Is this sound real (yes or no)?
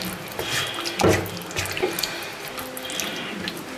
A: yes